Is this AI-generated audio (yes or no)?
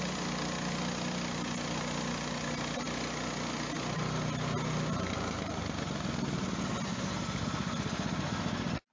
no